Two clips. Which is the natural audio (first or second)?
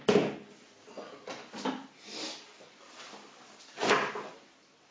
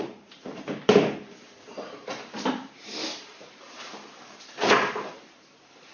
first